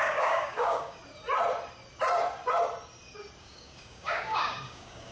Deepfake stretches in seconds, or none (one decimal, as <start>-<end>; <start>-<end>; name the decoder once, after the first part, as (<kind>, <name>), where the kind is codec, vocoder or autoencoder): 0.0-1.0 (codec, DAC); 3.4-5.1